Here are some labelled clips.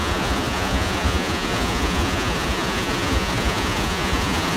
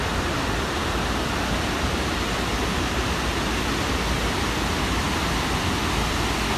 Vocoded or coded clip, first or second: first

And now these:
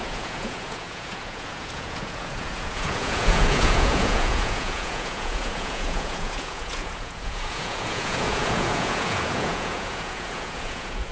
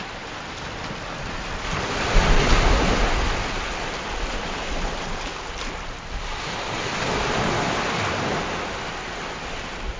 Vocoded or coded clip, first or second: first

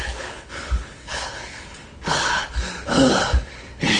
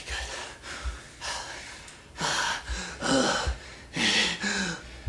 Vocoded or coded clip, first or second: first